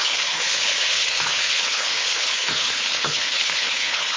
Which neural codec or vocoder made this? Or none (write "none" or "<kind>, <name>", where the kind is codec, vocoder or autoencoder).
codec, HILCodec